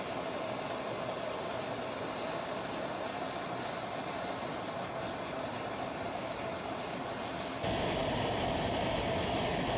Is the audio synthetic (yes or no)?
no